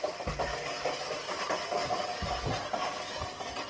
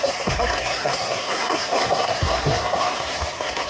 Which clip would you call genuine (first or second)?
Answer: first